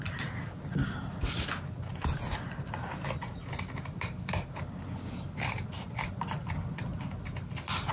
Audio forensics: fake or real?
real